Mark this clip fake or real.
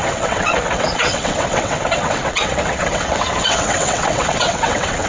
fake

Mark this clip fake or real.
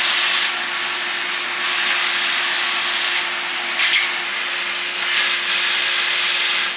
real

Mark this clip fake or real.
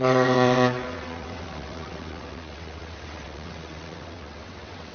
fake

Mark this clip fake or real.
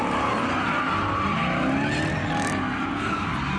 real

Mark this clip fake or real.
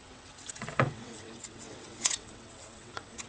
fake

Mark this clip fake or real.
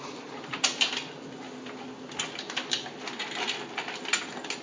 real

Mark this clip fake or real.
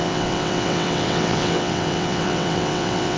fake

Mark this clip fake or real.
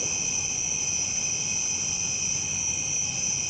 real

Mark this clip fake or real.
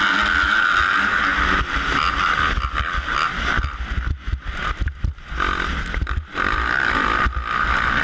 real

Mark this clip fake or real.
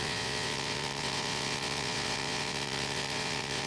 fake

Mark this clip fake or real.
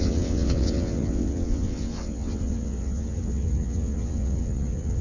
fake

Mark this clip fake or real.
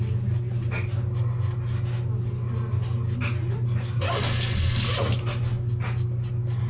real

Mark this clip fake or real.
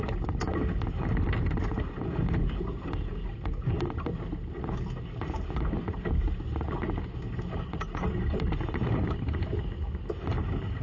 real